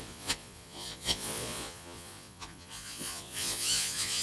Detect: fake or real fake